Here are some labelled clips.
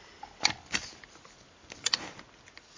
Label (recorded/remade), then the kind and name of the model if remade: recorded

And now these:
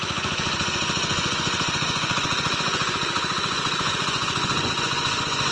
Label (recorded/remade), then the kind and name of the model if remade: remade, vocoder, Vocos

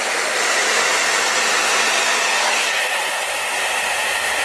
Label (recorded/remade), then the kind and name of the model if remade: recorded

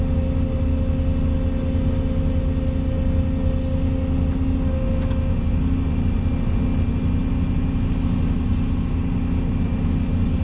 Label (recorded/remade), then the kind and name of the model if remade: recorded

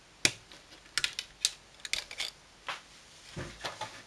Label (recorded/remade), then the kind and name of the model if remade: recorded